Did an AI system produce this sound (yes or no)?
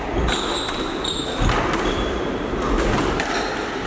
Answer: no